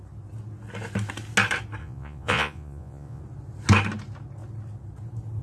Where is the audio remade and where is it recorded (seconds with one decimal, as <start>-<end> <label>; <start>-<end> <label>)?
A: 0.0-1.8 recorded; 1.8-3.2 remade; 3.2-5.4 recorded